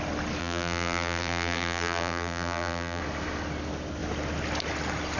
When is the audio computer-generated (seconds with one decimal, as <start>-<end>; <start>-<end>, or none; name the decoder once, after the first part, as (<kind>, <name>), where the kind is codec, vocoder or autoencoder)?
0.4-3.0 (vocoder, BigVGAN v2)